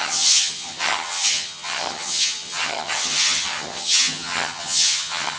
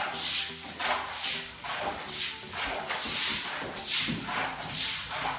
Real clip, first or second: second